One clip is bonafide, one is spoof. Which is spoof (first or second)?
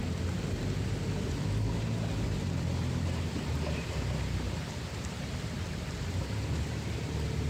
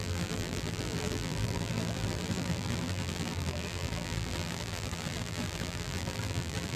second